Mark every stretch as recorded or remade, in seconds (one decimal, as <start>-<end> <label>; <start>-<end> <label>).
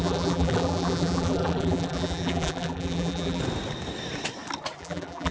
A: 0.0-3.4 remade; 3.4-4.8 recorded; 4.8-5.3 remade